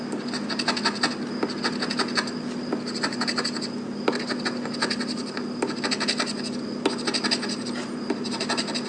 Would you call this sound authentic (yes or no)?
yes